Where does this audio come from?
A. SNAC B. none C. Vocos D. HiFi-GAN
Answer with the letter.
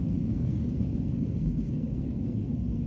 A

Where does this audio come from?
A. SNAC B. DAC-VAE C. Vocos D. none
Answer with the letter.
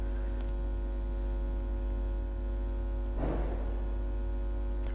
D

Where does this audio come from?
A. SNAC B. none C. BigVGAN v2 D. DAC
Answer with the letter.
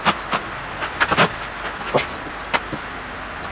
B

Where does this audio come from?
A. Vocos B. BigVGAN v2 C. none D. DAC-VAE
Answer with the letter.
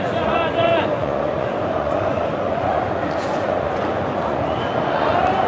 A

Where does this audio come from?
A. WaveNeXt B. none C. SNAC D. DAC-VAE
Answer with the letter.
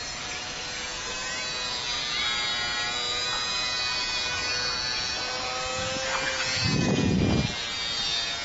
B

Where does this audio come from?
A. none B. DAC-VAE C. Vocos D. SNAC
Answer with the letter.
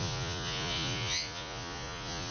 C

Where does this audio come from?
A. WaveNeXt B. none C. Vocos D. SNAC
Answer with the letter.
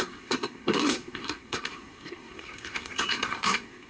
D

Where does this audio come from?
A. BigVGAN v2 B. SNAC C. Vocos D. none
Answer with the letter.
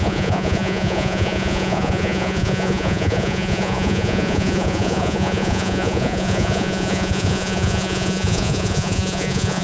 C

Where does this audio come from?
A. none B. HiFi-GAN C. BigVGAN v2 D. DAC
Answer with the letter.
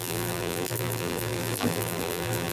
C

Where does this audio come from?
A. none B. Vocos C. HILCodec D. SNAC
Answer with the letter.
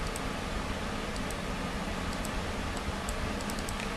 A